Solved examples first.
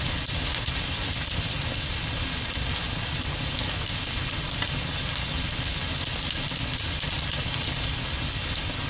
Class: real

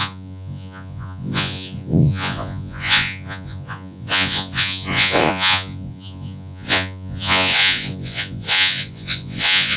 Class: fake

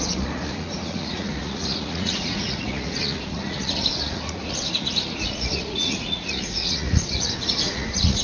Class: fake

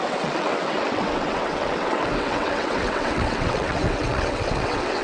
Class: fake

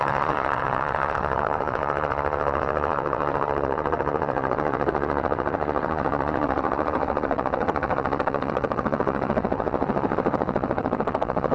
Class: fake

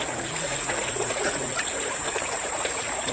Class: fake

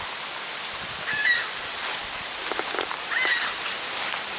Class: real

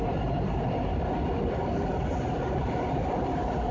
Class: real